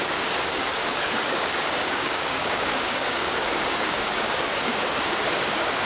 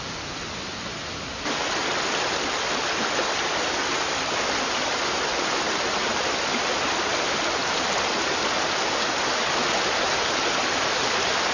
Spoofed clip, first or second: first